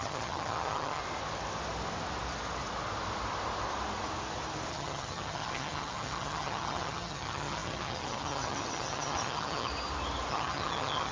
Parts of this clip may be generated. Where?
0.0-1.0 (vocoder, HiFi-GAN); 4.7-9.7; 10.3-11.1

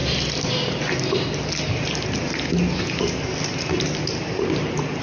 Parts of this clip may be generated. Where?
none